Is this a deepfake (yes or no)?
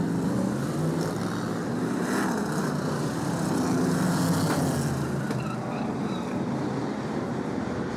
no